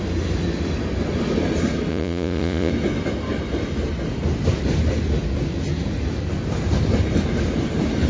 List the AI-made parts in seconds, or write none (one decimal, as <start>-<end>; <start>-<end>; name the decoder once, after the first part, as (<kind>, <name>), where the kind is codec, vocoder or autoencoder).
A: 1.9-2.7 (vocoder, Vocos)